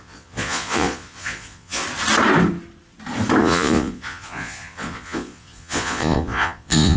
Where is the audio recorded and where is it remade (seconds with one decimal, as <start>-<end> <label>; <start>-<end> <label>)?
0.0-1.8 remade; 1.8-3.4 recorded; 3.4-7.0 remade